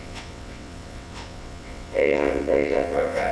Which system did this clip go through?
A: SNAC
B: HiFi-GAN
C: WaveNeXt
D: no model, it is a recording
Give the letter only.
C